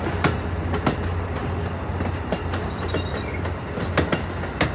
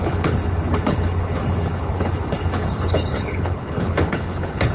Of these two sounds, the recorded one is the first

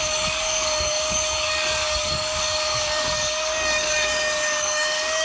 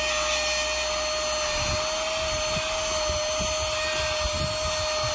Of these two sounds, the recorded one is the second